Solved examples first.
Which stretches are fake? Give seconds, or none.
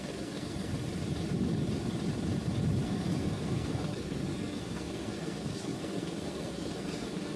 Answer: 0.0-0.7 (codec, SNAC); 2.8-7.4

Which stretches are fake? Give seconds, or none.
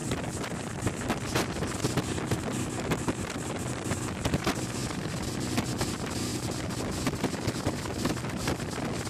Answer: 4.8-5.4 (vocoder, BigVGAN v2); 6.3-7.3